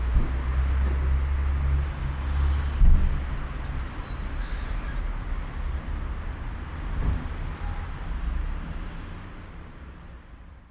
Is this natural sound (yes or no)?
yes